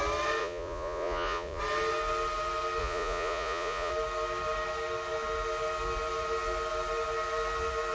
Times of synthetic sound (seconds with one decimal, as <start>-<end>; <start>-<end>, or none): 0.4-1.6; 2.8-3.9